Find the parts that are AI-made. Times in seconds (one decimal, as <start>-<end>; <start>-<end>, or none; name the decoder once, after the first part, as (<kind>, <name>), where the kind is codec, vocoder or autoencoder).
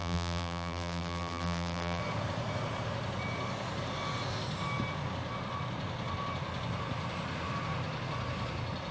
0.0-2.0 (vocoder, BigVGAN v2)